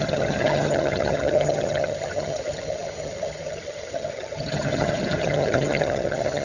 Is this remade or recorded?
remade